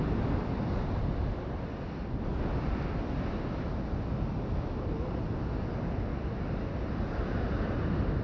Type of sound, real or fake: real